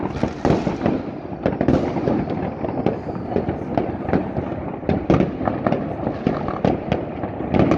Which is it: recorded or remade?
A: recorded